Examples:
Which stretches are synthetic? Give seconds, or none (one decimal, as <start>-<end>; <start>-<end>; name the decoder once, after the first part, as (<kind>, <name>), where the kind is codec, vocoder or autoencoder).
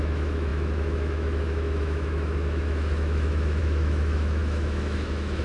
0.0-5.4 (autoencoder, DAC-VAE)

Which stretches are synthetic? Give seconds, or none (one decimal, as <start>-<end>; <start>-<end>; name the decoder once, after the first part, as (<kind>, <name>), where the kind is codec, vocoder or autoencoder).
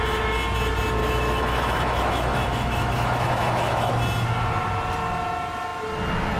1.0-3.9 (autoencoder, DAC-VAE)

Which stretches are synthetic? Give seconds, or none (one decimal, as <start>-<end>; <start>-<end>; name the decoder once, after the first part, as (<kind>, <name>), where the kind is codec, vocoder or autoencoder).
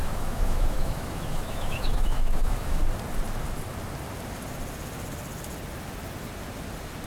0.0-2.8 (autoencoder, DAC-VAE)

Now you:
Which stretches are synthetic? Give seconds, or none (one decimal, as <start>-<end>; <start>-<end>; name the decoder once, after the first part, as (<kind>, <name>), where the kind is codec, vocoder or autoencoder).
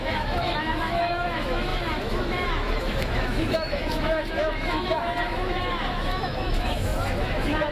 0.0-7.7 (autoencoder, DAC-VAE)